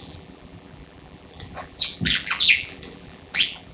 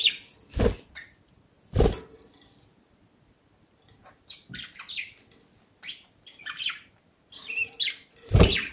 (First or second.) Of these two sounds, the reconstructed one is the first